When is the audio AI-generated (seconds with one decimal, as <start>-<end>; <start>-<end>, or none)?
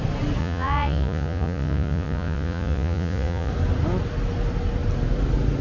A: 0.4-3.5